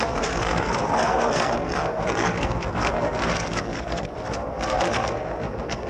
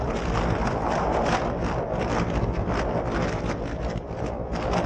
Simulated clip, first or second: first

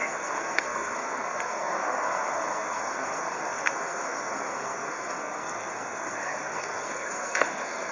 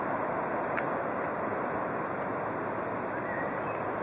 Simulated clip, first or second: first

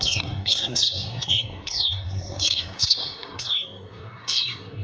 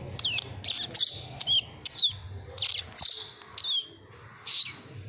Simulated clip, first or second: first